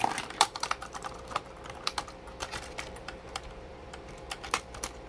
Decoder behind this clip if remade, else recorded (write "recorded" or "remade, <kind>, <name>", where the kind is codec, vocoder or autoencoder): remade, vocoder, BigVGAN v2